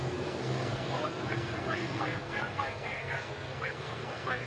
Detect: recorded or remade remade